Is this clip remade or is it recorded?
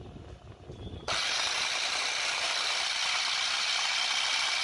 recorded